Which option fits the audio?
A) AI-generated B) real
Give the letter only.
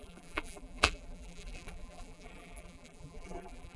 A